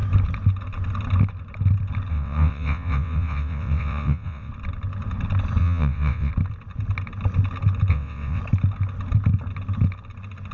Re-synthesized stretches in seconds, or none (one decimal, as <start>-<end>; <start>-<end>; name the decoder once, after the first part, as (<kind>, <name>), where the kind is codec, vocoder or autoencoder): 2.1-4.5 (vocoder, WaveNeXt); 5.6-6.3; 7.9-8.4